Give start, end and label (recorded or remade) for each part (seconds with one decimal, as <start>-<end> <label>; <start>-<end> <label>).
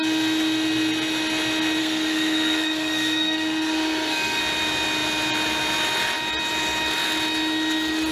0.0-1.8 recorded; 1.8-4.4 remade; 4.4-8.1 recorded